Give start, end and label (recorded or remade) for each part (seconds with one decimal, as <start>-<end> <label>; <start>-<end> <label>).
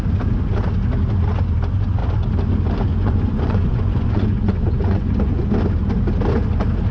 0.0-2.9 recorded; 2.9-5.5 remade; 5.5-6.9 recorded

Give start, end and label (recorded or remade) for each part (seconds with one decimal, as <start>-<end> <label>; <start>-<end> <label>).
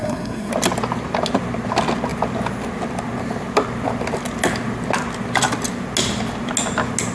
0.0-0.5 remade; 0.5-7.1 recorded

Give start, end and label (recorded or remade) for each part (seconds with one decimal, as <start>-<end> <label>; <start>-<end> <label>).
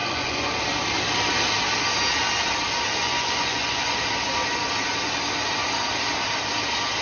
0.0-0.5 remade; 0.5-3.0 recorded; 3.0-4.0 remade; 4.0-7.0 recorded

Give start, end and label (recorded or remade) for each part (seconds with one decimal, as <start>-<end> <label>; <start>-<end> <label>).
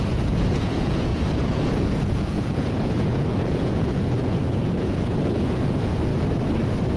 0.0-6.1 remade; 6.1-7.0 recorded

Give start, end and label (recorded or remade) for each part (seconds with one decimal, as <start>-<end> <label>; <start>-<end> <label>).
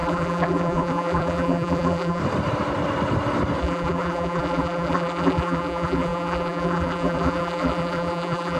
0.0-2.2 remade; 2.2-3.6 recorded; 3.6-8.6 remade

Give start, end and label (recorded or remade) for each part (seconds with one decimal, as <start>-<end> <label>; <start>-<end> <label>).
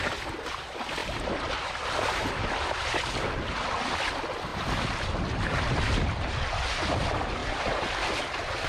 0.0-7.4 recorded; 7.4-8.2 remade; 8.2-8.7 recorded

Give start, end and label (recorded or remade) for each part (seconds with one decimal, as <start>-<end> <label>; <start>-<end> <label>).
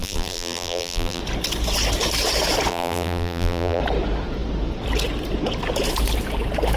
0.0-1.2 remade; 1.2-2.7 recorded; 2.7-3.8 remade; 3.8-6.8 recorded